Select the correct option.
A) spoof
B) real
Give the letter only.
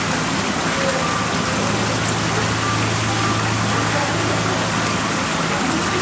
B